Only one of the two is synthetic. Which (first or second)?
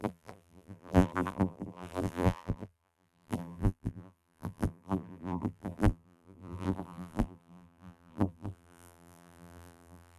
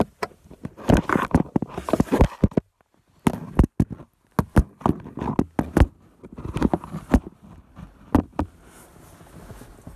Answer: first